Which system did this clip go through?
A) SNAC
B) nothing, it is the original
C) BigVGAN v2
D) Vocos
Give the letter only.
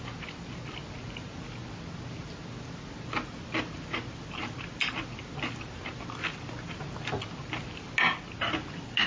B